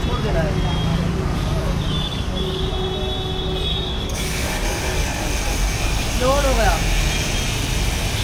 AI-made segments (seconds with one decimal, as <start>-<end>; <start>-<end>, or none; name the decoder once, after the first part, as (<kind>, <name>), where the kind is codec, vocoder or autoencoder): 0.9-2.7 (codec, DAC); 3.7-5.3